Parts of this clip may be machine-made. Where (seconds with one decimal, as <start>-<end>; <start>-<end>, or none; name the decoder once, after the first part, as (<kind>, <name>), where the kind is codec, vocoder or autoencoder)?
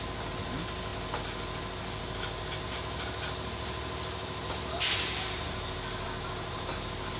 none